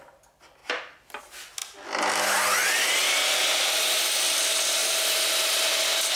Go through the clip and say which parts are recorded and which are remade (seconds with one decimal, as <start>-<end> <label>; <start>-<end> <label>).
0.0-6.2 recorded